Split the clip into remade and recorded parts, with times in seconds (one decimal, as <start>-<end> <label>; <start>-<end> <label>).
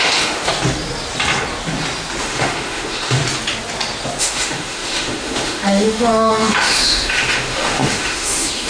0.0-0.5 remade; 0.5-2.2 recorded; 2.2-3.2 remade; 3.2-4.2 recorded; 4.2-8.7 remade